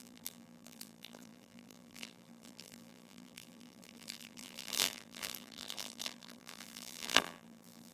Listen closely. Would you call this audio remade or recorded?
remade